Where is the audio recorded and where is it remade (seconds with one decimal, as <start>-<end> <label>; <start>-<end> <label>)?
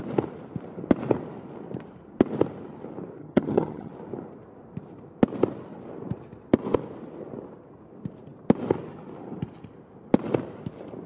0.0-3.2 recorded; 3.2-3.9 remade; 3.9-11.1 recorded